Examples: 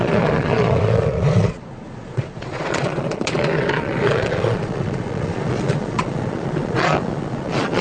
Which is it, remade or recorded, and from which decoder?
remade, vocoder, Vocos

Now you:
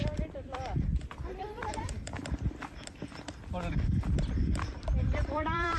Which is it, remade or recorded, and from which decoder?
remade, vocoder, BigVGAN v2